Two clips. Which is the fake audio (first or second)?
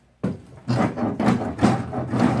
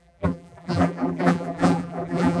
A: second